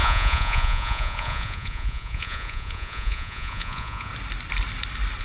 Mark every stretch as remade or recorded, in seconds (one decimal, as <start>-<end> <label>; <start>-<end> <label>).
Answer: 0.0-4.1 remade; 4.1-5.2 recorded